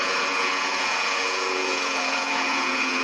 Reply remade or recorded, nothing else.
remade